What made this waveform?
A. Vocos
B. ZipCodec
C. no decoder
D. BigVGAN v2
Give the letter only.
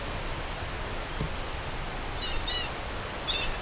C